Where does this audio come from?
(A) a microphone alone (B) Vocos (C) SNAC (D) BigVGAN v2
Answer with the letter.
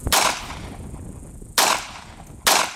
A